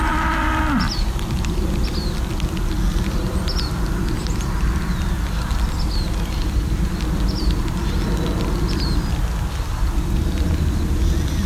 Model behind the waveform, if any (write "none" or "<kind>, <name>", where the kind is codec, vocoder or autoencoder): none